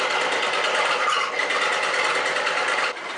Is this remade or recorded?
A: recorded